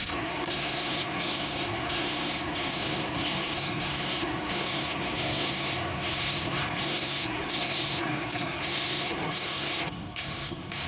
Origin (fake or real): fake